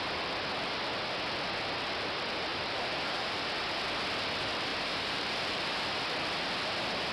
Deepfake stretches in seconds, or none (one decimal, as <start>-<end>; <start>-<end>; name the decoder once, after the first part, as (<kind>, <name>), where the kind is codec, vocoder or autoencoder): 2.5-3.3 (vocoder, BigVGAN v2); 4.7-5.6